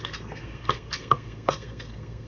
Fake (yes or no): yes